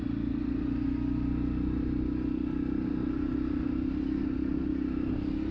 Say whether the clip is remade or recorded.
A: recorded